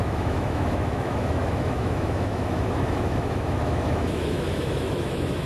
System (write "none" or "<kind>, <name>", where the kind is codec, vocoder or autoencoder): autoencoder, DAC-VAE